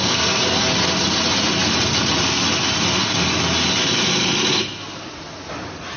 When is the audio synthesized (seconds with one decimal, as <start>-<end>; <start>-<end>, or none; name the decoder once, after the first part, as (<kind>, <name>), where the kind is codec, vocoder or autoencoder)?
0.0-0.6 (codec, SNAC)